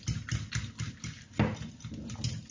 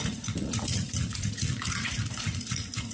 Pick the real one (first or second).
first